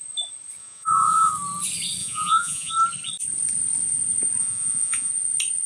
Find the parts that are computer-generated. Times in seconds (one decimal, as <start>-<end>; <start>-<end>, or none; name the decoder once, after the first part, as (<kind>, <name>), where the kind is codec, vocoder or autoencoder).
0.6-1.3 (vocoder, Vocos); 2.0-2.7; 4.4-5.1